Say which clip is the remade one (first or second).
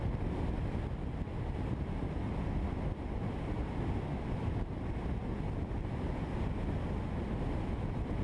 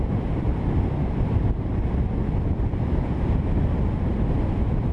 second